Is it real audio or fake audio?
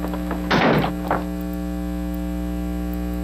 real